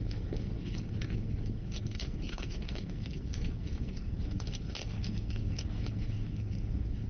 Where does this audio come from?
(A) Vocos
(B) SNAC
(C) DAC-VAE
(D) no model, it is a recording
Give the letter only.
B